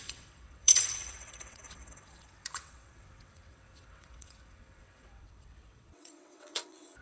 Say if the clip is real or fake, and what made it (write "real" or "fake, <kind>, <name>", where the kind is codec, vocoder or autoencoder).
fake, vocoder, WaveNeXt